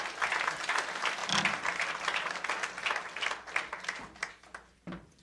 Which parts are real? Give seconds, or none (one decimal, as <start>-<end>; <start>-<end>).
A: 0.0-5.2